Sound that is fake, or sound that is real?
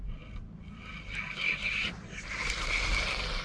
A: real